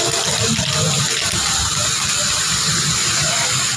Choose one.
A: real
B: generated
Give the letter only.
A